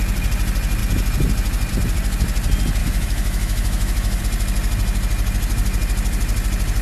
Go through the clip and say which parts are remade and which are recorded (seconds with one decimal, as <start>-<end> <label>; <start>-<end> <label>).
0.0-2.8 recorded; 2.8-4.2 remade; 4.2-6.8 recorded